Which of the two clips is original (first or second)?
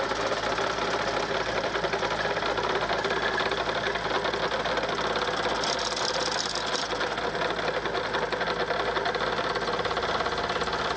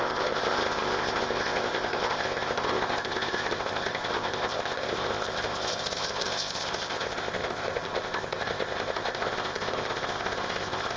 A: first